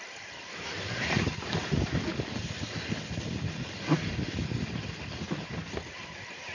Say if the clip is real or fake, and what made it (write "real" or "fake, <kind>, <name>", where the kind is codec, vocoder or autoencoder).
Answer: real